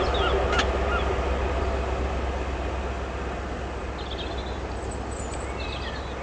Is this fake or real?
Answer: real